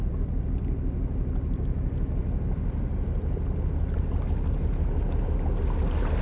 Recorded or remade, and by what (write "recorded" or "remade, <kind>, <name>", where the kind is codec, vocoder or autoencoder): recorded